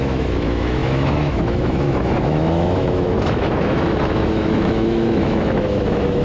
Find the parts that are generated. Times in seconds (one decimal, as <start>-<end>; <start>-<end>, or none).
0.0-6.2